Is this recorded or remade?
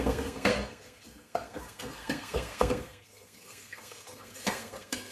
remade